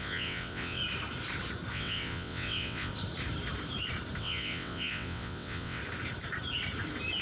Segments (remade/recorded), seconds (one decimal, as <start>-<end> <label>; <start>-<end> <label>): 0.0-0.8 remade; 0.8-1.7 recorded; 1.7-2.9 remade; 2.9-4.2 recorded; 4.2-5.8 remade; 5.8-7.2 recorded